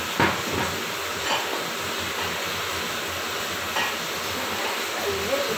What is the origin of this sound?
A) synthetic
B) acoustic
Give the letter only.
B